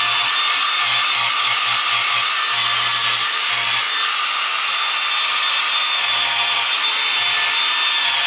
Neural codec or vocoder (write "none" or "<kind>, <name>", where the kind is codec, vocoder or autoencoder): none